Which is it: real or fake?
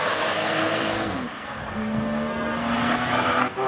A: fake